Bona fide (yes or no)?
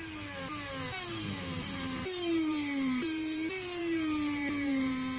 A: no